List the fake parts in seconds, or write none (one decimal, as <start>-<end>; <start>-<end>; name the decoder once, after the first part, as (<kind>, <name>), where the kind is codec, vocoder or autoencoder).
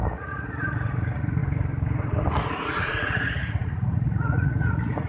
0.0-1.4 (vocoder, Vocos); 2.4-5.1